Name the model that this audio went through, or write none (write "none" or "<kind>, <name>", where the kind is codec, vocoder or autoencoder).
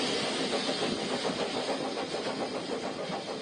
none